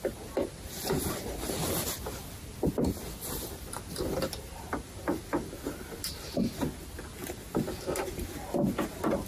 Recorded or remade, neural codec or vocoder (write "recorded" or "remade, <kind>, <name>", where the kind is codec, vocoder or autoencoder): recorded